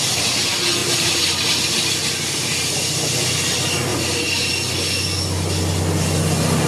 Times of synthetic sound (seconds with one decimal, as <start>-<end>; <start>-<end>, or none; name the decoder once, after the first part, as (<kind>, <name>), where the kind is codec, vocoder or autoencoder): 0.8-1.9 (vocoder, BigVGAN v2); 3.9-4.5